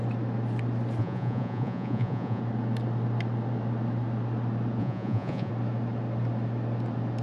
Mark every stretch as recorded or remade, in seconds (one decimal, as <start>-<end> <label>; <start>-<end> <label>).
0.0-1.0 recorded; 1.0-2.4 remade; 2.4-4.8 recorded; 4.8-5.5 remade; 5.5-7.2 recorded